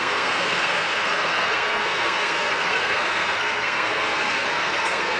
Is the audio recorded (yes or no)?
no